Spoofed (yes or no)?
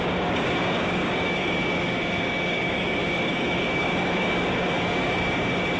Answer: yes